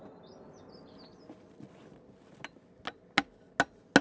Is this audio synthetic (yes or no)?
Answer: no